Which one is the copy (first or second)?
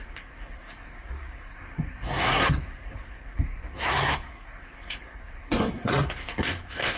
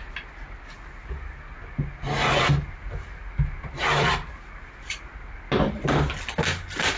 first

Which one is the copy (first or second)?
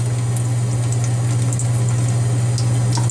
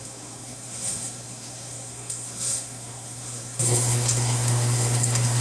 second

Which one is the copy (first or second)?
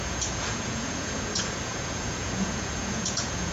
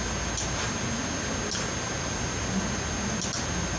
first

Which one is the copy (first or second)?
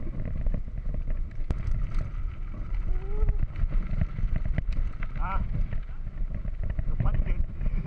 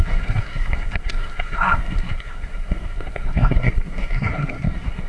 second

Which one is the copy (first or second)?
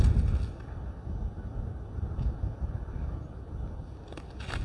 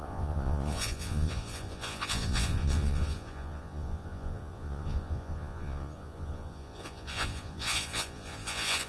second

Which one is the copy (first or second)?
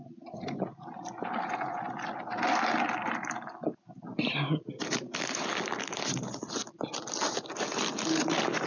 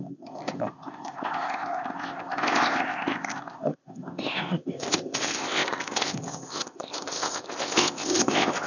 second